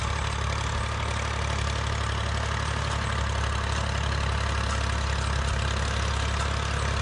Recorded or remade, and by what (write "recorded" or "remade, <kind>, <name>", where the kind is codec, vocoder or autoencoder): recorded